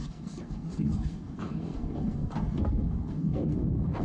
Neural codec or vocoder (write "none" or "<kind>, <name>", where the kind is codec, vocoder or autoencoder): codec, SNAC